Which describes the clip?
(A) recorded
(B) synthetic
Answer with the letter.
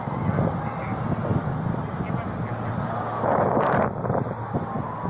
A